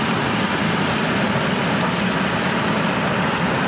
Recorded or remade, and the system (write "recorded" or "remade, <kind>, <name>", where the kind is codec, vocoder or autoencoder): recorded